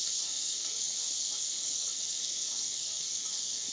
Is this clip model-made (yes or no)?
yes